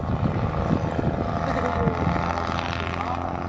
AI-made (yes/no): no